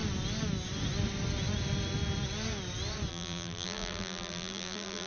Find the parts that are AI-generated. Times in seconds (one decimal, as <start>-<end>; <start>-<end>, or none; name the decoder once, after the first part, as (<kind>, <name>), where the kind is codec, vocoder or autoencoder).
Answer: 3.1-5.1 (vocoder, BigVGAN v2)